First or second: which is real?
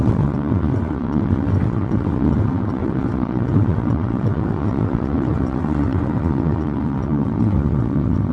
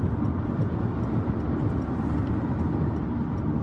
second